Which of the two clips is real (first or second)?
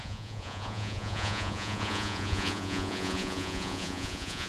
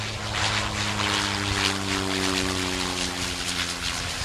second